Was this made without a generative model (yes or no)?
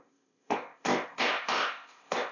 no